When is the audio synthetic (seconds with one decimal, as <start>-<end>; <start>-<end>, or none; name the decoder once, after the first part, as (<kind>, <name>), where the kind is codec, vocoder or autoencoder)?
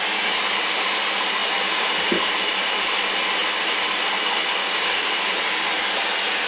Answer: 4.6-5.1 (codec, DAC)